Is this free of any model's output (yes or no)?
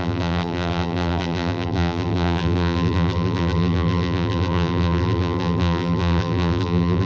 no